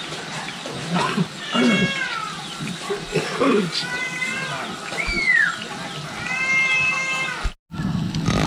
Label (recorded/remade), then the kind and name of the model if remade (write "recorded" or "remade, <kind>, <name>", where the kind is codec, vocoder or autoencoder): recorded